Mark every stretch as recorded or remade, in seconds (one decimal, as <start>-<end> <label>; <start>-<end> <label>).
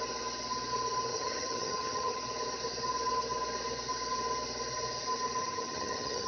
0.0-1.1 recorded; 1.1-2.2 remade; 2.2-5.4 recorded; 5.4-6.3 remade